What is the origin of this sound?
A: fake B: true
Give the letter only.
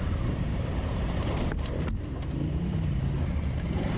A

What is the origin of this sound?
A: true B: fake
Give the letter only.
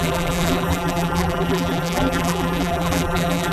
B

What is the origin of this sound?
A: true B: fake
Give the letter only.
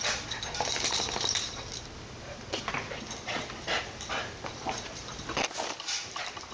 B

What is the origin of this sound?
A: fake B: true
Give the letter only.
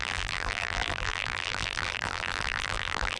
A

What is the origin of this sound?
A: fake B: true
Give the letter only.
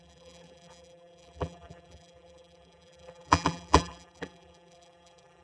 A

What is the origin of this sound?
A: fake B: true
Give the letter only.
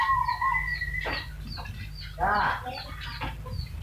B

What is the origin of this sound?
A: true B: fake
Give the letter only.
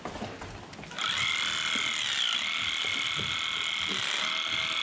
A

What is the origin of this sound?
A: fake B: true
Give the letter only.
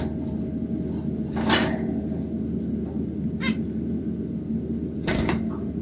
B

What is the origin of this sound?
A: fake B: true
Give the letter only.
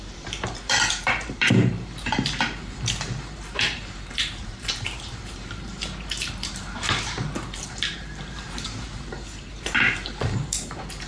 A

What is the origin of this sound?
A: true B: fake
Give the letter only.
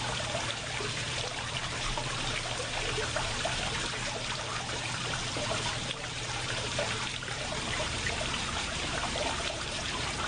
B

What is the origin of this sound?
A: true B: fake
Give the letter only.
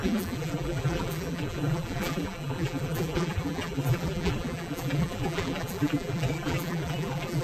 B